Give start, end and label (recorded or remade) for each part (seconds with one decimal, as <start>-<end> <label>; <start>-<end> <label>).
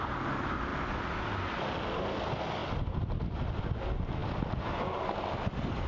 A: 0.0-5.9 recorded